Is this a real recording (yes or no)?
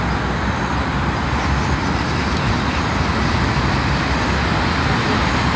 yes